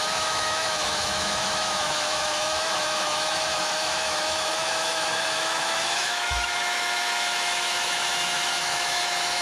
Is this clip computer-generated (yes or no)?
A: yes